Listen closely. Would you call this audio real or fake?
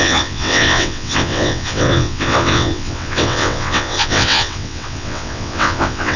fake